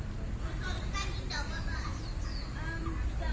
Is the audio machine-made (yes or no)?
no